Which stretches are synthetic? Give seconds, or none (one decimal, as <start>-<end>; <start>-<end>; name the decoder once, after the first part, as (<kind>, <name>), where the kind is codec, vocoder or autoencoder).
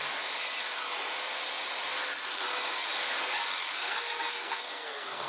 3.7-5.3 (codec, SNAC)